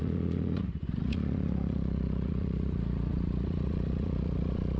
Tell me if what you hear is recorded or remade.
remade